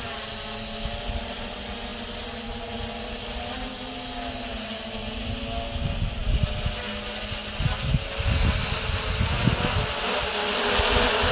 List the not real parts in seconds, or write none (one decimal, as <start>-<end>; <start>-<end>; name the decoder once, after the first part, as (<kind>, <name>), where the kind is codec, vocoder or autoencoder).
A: none